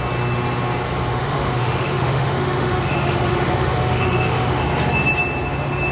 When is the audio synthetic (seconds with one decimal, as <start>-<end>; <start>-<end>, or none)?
1.1-4.6